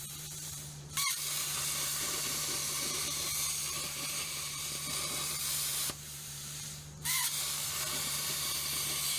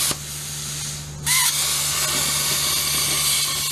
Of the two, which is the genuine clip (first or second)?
second